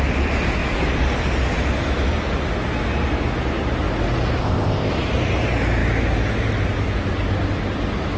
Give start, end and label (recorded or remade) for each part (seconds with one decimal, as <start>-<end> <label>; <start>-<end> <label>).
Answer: 0.0-4.4 recorded; 4.4-4.9 remade; 4.9-8.2 recorded